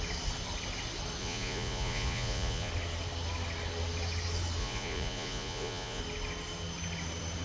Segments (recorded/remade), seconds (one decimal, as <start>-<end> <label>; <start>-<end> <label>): 0.0-1.2 recorded; 1.2-2.7 remade; 2.7-4.6 recorded; 4.6-6.0 remade; 6.0-7.4 recorded